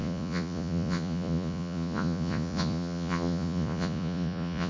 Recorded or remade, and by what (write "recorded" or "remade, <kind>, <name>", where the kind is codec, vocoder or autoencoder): remade, vocoder, Vocos